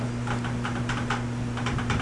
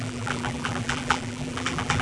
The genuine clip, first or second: first